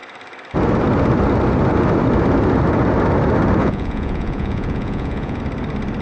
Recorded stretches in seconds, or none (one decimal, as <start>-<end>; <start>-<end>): 0.0-3.6; 5.4-6.0